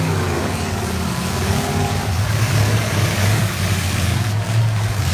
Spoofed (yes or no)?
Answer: yes